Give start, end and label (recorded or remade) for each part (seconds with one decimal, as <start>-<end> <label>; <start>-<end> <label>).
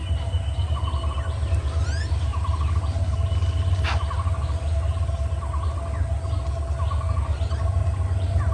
0.0-8.5 recorded